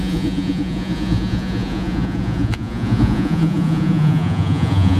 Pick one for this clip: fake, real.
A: fake